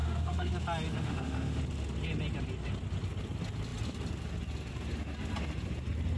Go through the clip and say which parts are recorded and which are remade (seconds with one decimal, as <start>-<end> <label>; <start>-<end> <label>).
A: 0.0-0.5 remade; 0.5-0.9 recorded; 0.9-1.6 remade; 1.6-6.2 recorded